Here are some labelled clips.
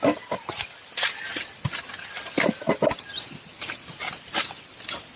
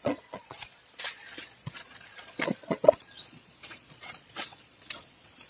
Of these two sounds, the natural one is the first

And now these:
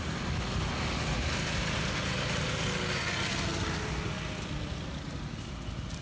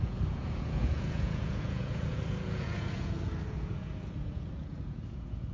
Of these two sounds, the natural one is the first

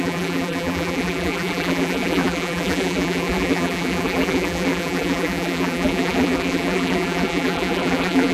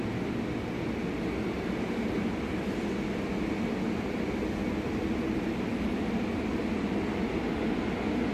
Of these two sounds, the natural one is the second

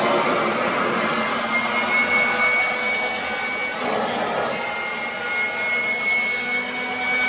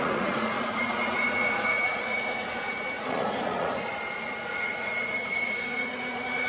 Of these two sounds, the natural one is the first